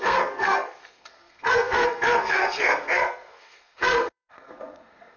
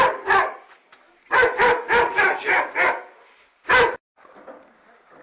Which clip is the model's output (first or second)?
first